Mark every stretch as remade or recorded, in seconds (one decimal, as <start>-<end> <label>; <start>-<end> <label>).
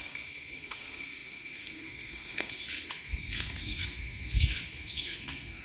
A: 0.0-5.6 remade